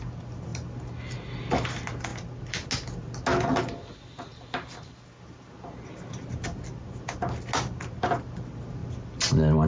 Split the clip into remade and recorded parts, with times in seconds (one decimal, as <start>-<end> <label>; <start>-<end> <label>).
0.0-9.7 recorded